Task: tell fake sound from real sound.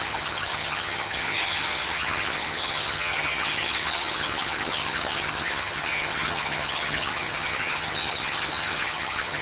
fake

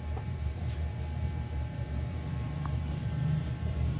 fake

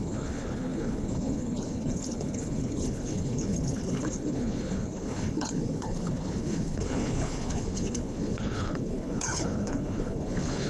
fake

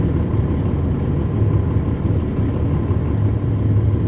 real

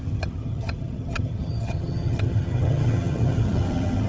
fake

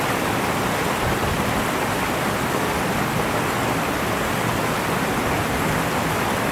real